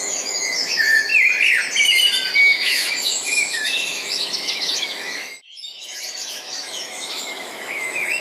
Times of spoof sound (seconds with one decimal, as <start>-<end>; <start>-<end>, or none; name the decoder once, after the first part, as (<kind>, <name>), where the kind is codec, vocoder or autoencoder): 0.0-1.1 (autoencoder, DAC-VAE); 2.4-8.2